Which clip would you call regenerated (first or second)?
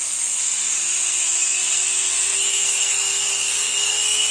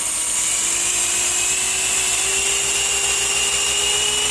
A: first